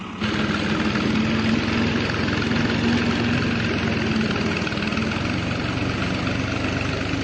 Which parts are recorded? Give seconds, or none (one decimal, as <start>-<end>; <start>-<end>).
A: 0.0-7.2